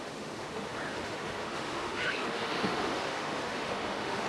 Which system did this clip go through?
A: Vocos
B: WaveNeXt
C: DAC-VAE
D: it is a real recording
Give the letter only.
C